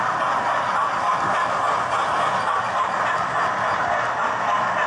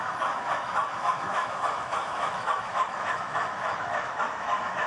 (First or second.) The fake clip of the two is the second